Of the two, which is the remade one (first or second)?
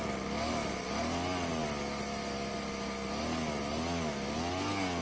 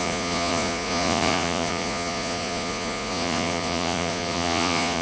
second